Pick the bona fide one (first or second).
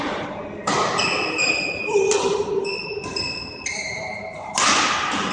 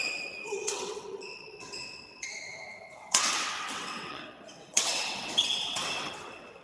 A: first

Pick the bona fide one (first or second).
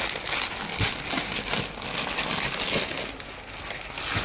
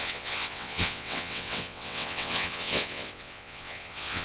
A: first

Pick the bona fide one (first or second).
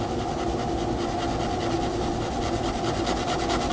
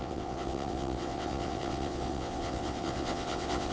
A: first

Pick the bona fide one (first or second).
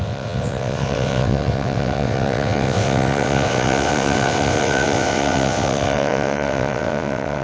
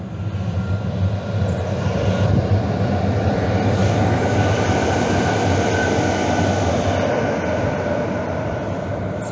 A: second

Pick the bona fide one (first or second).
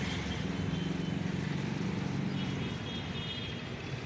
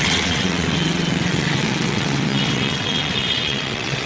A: first